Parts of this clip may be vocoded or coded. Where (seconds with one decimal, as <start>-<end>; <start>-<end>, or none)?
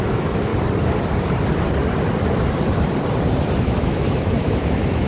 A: 0.0-0.5; 3.6-5.1